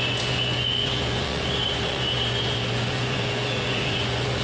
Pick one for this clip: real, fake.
fake